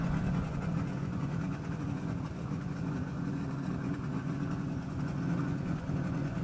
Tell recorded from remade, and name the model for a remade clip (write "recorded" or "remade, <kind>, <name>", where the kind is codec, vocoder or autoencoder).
remade, vocoder, Vocos